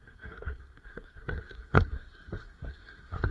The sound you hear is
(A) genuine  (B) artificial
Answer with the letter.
B